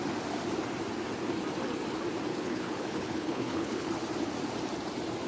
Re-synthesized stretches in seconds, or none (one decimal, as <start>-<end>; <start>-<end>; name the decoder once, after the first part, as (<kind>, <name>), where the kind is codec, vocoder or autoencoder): 2.3-3.9 (codec, HILCodec)